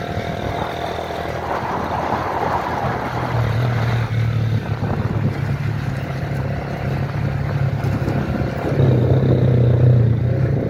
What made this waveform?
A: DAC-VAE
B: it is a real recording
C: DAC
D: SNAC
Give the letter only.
B